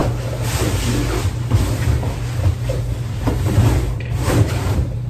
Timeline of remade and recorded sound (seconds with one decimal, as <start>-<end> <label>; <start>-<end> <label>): 0.0-2.5 recorded; 2.5-5.1 remade

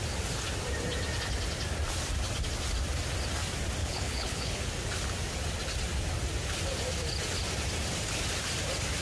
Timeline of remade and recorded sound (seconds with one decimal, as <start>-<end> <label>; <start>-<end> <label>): 0.0-3.8 recorded; 3.8-4.6 remade; 4.6-9.0 recorded

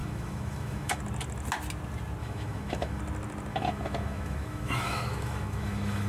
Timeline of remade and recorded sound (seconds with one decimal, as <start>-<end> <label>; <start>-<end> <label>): 0.0-1.0 remade; 1.0-2.2 recorded; 2.2-3.0 remade; 3.0-3.5 recorded; 3.5-6.1 remade

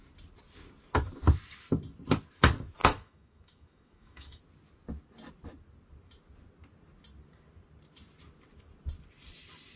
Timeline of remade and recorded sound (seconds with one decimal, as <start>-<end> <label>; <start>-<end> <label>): 0.0-2.8 recorded; 2.8-4.4 remade; 4.4-9.8 recorded

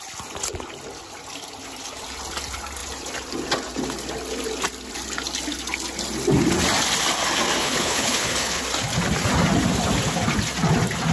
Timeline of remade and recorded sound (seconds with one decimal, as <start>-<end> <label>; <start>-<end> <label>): 0.0-7.6 recorded; 7.6-8.6 remade; 8.6-11.1 recorded

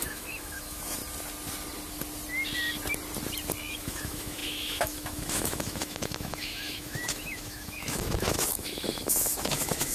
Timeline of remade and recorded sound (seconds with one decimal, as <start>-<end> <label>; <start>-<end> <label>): 0.0-1.0 remade; 1.0-3.7 recorded; 3.7-9.9 remade

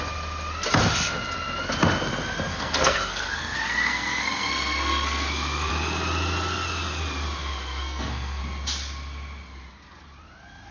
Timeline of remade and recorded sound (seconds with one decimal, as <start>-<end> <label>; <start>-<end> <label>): 0.0-2.5 recorded; 2.5-5.7 remade; 5.7-7.4 recorded; 7.4-8.4 remade; 8.4-10.7 recorded

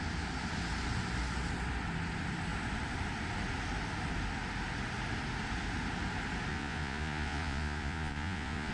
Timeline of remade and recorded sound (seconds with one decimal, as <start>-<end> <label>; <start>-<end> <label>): 0.0-6.5 recorded; 6.5-8.7 remade